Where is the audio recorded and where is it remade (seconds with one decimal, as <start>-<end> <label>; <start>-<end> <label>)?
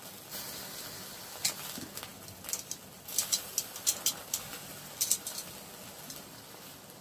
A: 0.0-7.0 recorded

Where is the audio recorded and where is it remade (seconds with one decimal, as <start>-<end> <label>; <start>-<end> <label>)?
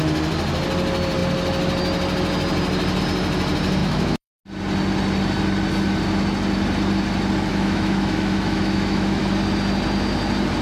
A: 0.0-3.8 recorded; 3.8-4.4 remade; 4.4-7.5 recorded; 7.5-9.2 remade; 9.2-10.6 recorded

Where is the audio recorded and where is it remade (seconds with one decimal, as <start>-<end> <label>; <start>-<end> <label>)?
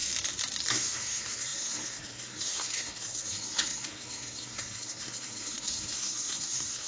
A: 0.0-0.7 recorded; 0.7-6.9 remade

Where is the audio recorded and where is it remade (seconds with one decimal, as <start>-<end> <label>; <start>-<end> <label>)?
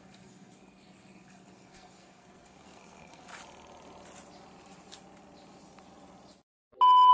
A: 0.0-3.3 remade; 3.3-7.1 recorded